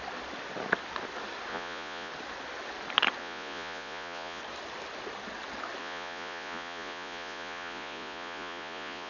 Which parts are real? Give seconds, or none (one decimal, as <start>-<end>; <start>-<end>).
0.0-1.5; 2.1-3.2; 4.4-5.8